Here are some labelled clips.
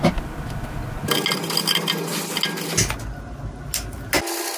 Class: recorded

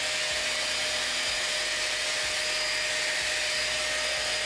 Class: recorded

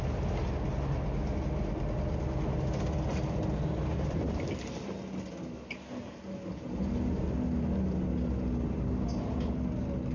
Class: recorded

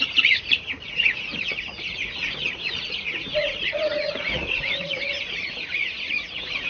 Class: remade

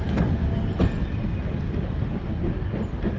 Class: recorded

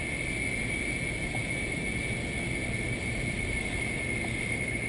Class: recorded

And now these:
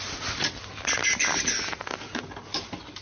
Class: recorded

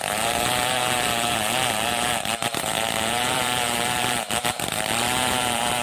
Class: remade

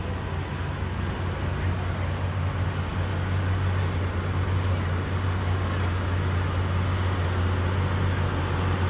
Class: recorded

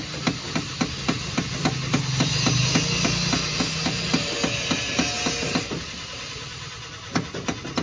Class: recorded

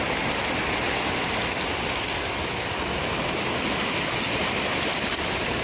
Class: recorded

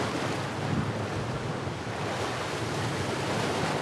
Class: recorded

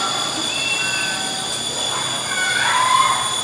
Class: recorded